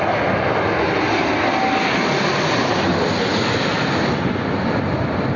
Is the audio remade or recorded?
recorded